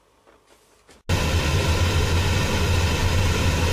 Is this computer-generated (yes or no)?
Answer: no